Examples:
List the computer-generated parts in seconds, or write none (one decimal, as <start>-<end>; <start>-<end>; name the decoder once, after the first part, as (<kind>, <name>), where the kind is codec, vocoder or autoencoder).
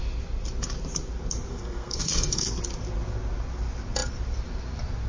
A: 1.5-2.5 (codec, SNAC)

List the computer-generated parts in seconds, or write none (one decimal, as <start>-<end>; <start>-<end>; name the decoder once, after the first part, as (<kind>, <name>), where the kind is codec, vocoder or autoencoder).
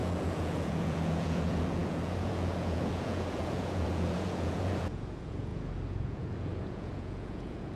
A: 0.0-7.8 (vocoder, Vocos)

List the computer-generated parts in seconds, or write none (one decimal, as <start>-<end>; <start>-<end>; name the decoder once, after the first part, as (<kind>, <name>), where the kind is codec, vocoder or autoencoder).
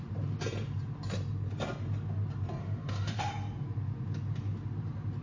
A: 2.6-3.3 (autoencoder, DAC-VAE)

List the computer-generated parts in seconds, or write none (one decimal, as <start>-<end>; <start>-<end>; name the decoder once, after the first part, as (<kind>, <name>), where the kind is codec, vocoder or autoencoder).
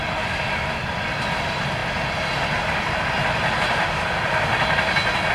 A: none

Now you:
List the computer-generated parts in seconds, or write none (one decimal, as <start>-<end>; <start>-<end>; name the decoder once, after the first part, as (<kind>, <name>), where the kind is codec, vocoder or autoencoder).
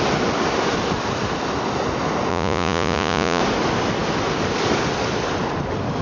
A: 2.3-3.4 (vocoder, Vocos)